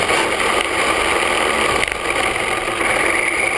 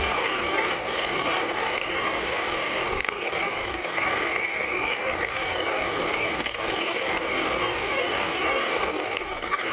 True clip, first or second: first